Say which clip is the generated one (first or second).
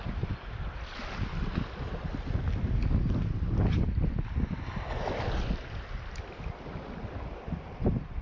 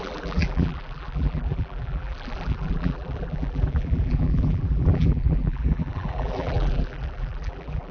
second